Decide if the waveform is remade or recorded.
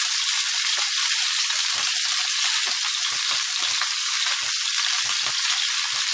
recorded